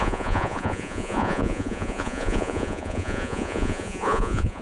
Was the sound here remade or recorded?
remade